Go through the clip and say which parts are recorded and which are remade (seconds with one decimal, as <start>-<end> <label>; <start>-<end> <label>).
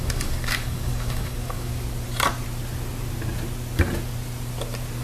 0.0-1.7 remade; 1.7-5.0 recorded